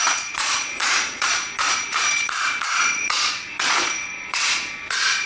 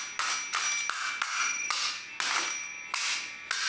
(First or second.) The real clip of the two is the second